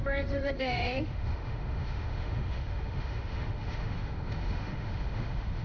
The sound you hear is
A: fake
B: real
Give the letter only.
A